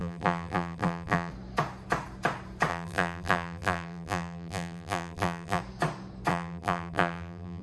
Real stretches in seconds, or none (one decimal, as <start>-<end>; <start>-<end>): 1.3-2.7; 5.6-6.3

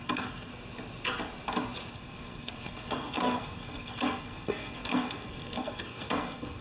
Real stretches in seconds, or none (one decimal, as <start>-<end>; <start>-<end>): 0.5-1.9

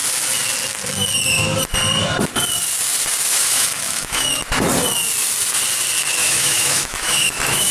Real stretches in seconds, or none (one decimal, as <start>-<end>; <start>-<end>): 0.0-3.3; 4.4-6.2

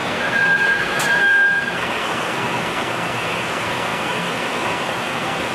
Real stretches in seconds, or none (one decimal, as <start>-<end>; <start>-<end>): none